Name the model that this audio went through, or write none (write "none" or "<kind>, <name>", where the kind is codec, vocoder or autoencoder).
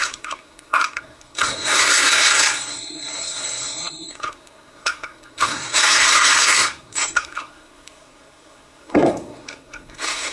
codec, SNAC